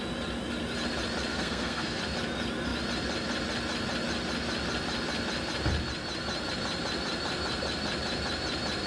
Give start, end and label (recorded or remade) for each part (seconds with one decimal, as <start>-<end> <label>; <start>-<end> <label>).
0.0-1.3 recorded; 1.3-2.0 remade; 2.0-8.9 recorded